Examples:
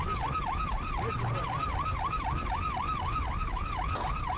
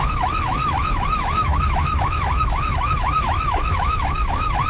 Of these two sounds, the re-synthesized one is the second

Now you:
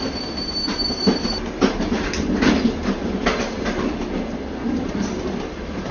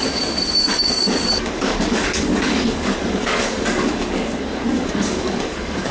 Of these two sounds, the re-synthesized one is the second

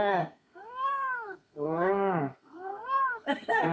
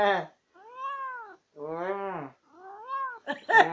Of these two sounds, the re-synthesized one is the first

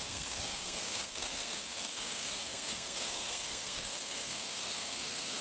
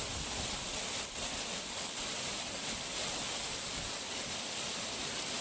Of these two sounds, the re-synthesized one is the first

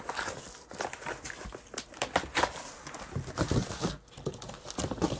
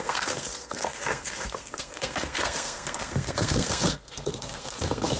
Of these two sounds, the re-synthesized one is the second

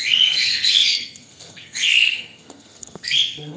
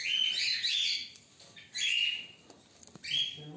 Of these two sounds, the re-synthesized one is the first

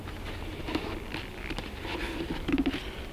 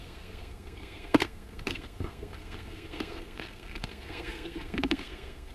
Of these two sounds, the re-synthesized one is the second